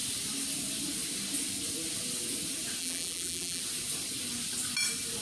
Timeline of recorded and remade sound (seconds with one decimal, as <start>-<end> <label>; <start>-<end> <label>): 0.0-2.8 recorded; 2.8-3.6 remade; 3.6-5.2 recorded